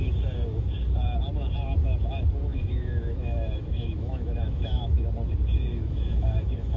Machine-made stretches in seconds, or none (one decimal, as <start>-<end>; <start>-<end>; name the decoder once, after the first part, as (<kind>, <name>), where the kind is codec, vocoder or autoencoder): 2.5-5.1 (autoencoder, DAC-VAE); 5.7-6.8